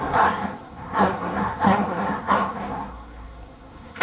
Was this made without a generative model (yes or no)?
no